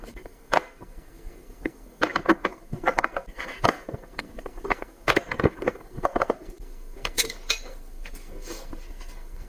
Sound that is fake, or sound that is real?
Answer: fake